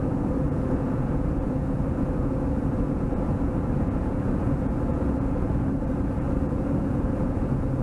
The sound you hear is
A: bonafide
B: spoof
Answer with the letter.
B